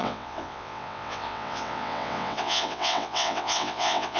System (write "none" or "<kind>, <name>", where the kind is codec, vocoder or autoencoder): vocoder, WaveNeXt